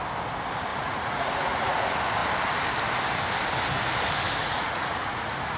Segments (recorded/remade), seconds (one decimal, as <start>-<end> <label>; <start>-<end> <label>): 0.0-0.7 recorded; 0.7-1.8 remade; 1.8-4.4 recorded; 4.4-5.6 remade